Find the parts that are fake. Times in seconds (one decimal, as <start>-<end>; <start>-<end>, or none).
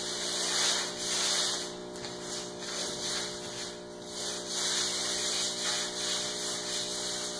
none